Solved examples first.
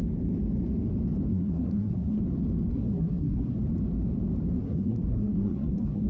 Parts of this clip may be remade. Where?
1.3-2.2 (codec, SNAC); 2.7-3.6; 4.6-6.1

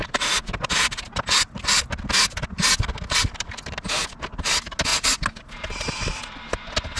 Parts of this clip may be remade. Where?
none

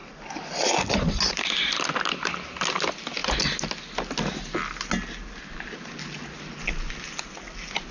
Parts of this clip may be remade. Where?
none